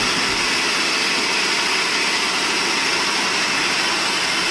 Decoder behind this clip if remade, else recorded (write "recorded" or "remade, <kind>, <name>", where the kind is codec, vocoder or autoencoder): recorded